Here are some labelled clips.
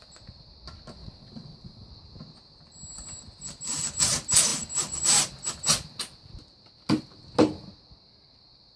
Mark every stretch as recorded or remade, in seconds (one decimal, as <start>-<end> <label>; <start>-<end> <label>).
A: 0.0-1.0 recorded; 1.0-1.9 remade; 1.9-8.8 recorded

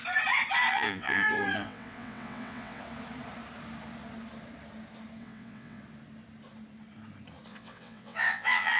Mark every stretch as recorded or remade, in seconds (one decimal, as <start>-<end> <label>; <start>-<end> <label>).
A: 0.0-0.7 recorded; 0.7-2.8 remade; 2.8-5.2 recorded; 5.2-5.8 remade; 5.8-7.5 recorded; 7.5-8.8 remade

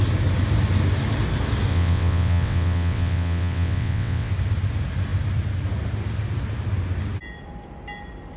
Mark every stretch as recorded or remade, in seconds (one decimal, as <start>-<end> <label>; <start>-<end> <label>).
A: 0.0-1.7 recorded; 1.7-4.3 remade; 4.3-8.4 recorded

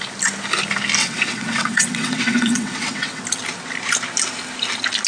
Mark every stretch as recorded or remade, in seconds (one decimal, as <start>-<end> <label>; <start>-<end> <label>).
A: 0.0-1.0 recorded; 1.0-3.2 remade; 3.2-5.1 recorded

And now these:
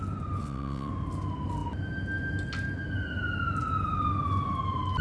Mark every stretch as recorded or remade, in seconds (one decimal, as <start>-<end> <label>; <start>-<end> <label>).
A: 0.0-0.4 recorded; 0.4-0.9 remade; 0.9-5.0 recorded

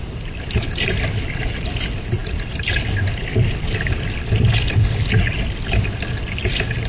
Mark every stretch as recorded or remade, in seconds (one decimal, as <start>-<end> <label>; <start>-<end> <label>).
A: 0.0-6.9 recorded

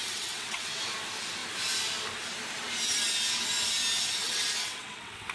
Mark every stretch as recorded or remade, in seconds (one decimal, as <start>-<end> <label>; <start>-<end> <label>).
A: 0.0-0.8 remade; 0.8-4.2 recorded; 4.2-5.3 remade